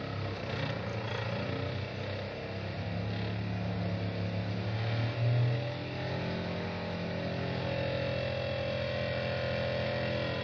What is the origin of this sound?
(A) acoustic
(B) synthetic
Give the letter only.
A